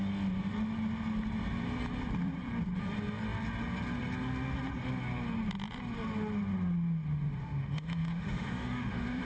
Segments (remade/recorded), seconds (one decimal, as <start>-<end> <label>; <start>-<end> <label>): 0.0-7.4 recorded; 7.4-9.2 remade